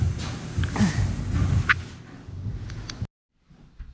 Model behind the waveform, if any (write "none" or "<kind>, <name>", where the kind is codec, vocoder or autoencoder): none